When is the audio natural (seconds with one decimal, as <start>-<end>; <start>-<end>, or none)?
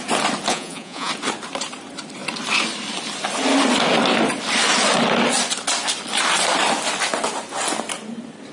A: 0.0-0.5; 1.1-8.5